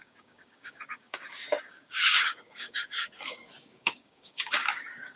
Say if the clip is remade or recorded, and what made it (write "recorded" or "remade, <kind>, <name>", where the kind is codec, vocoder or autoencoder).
remade, codec, DAC